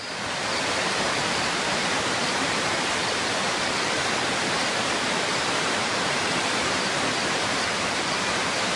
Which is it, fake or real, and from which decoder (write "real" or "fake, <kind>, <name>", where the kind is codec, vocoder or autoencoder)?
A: fake, vocoder, BigVGAN v2